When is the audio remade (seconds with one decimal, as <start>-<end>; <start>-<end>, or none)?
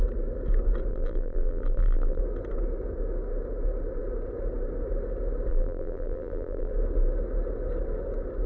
0.9-2.2; 5.5-6.7